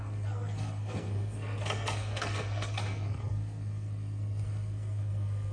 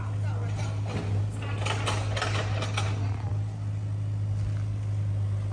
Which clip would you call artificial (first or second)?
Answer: first